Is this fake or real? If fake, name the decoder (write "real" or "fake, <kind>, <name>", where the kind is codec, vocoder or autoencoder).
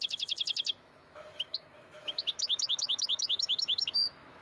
fake, autoencoder, DAC-VAE